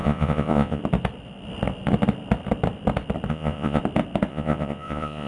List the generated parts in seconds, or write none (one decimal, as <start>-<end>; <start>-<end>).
0.0-0.8; 3.3-3.8; 4.3-5.3